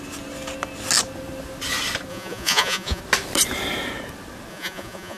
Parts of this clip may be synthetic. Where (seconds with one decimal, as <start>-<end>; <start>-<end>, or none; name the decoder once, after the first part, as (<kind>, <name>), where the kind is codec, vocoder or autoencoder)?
2.1-3.0 (vocoder, Vocos); 4.5-5.2